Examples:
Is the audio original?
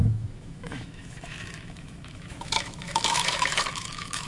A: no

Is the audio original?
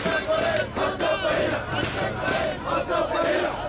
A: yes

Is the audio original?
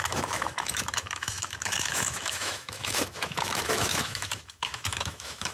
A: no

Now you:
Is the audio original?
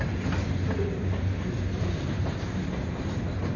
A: yes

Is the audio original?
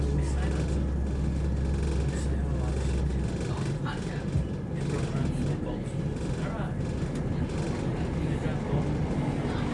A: yes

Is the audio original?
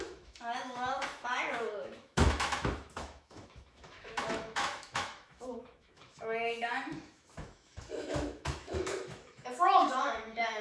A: no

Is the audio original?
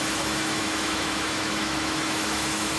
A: no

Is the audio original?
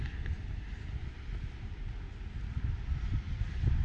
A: yes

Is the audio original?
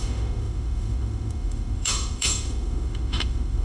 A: no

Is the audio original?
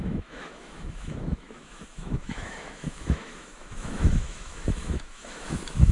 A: no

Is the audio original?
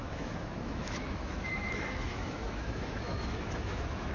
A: no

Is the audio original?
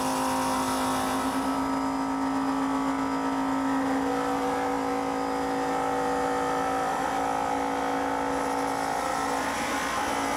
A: yes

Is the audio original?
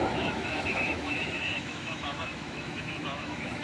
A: no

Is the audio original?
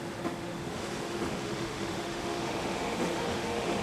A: no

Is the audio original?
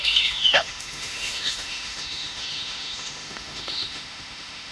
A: no